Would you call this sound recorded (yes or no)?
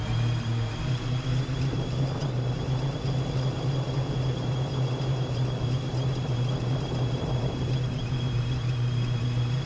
no